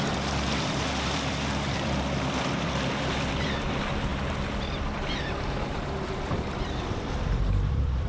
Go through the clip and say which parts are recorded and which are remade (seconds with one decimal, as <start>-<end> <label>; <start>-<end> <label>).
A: 0.0-8.1 remade